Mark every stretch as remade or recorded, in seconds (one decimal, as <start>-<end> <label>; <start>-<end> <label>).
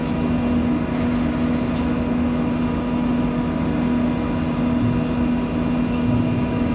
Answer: 0.0-6.7 recorded